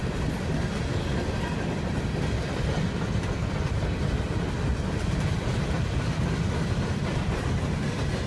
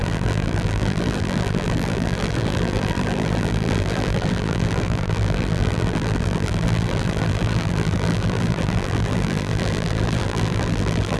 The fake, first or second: second